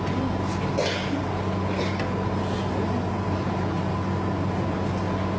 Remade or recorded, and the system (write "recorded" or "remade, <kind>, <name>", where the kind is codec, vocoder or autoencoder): recorded